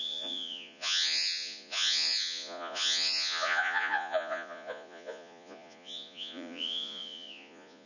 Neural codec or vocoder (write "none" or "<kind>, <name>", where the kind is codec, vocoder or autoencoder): vocoder, Vocos